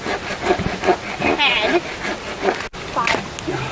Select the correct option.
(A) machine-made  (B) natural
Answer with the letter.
B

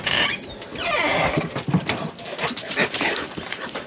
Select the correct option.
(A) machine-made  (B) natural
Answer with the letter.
A